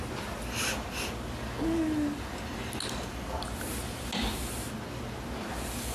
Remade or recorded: recorded